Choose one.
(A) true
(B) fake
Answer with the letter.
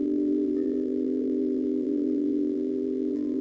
B